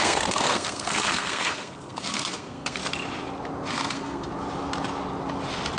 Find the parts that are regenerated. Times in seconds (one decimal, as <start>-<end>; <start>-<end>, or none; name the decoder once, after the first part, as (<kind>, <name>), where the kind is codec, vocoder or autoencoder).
0.0-2.8 (codec, SNAC); 3.7-4.3